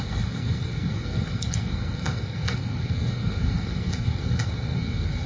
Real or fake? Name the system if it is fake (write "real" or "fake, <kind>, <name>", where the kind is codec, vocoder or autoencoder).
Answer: fake, codec, SNAC